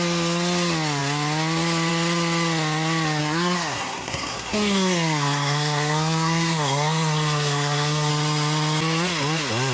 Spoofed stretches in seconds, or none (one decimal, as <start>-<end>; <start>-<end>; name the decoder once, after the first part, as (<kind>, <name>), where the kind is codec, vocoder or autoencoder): 3.2-8.1 (codec, SNAC)